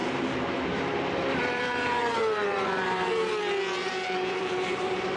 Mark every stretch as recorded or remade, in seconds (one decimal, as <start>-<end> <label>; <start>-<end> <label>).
0.0-3.1 remade; 3.1-3.8 recorded; 3.8-5.2 remade